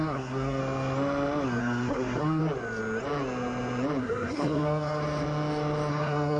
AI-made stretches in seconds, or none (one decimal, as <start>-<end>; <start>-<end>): 0.0-0.6; 1.6-2.4; 4.0-5.0; 5.9-6.4